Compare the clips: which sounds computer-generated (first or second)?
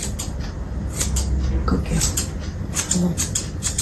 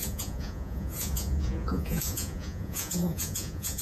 second